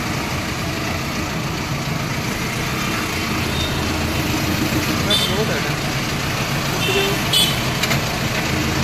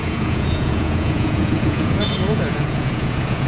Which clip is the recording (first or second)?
first